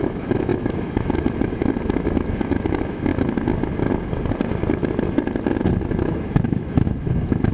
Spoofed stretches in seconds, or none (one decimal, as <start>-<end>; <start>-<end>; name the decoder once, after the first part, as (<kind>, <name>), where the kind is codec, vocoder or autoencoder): 0.0-3.1 (autoencoder, DAC-VAE); 5.9-7.5